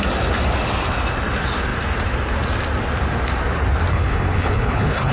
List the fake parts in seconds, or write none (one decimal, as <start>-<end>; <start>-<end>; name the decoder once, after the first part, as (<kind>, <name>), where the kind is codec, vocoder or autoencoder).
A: 3.9-5.1 (codec, HILCodec)